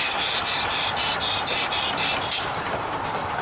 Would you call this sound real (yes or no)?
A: yes